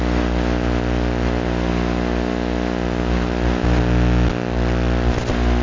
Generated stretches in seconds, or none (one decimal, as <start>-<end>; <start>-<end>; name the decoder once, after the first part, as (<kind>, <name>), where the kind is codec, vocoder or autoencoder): none